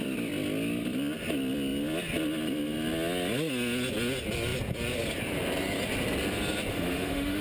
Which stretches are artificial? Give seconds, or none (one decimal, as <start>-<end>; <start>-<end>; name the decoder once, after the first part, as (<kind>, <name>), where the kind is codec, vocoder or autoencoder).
6.7-7.4 (autoencoder, DAC-VAE)